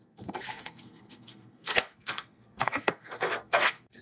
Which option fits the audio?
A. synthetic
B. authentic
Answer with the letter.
A